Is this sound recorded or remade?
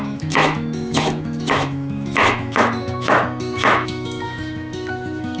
remade